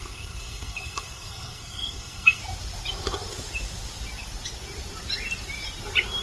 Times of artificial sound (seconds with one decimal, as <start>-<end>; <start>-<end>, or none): 0.0-2.4